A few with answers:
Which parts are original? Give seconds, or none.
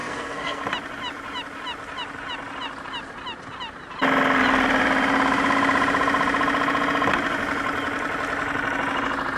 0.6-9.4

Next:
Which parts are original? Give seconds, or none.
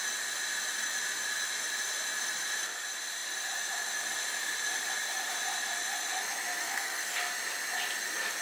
0.0-6.6; 7.2-8.4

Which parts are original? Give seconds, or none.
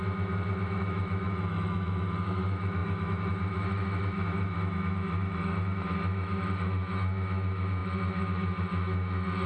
none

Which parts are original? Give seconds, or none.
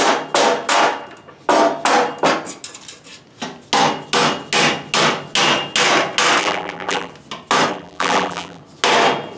0.0-6.4; 7.1-7.7; 8.6-9.4